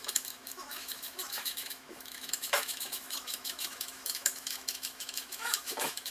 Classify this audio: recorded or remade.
remade